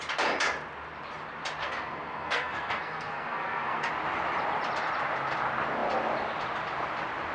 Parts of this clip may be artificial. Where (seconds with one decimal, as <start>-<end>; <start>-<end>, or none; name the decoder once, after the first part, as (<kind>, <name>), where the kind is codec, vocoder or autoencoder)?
1.6-3.9 (codec, SNAC)